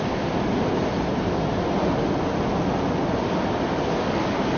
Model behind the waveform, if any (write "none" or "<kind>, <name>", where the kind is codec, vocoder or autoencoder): none